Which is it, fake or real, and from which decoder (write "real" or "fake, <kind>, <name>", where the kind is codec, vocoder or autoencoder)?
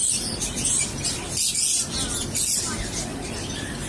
real